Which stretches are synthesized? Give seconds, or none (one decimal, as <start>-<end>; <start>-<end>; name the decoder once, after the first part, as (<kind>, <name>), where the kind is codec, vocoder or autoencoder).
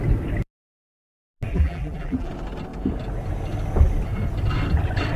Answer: 1.5-2.3 (vocoder, BigVGAN v2)